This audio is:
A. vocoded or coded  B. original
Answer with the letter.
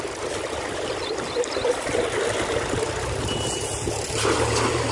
B